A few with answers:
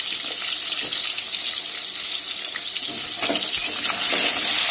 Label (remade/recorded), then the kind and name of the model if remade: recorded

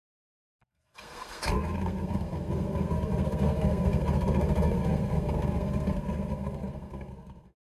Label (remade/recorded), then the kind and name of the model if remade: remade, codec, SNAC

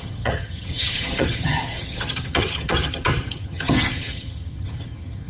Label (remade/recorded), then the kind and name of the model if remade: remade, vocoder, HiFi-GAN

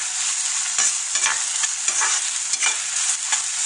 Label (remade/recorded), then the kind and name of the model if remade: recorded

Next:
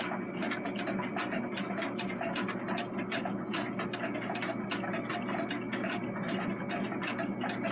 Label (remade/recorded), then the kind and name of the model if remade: recorded